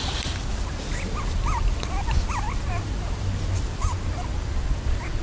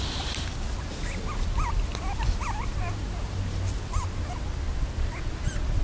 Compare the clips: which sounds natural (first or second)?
second